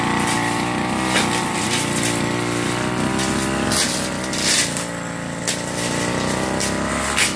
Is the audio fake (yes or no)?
no